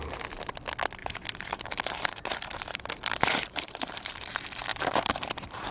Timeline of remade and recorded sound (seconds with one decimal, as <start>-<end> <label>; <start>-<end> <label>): 0.0-1.0 recorded; 1.0-4.3 remade; 4.3-4.7 recorded; 4.7-5.7 remade